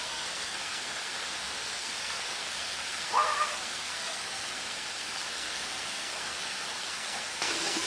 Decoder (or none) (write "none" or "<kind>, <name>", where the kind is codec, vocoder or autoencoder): codec, SNAC